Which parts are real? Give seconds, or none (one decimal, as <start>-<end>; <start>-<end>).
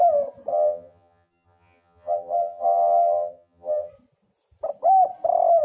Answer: 0.0-0.5; 3.9-5.6